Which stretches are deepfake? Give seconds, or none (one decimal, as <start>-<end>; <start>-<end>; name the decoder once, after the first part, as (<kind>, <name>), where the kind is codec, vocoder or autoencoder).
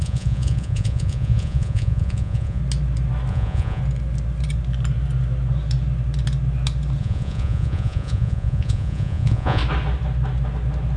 0.0-2.6 (vocoder, Vocos); 3.3-3.8; 7.0-9.6